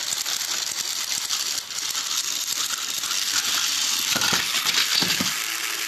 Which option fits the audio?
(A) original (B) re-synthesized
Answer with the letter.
A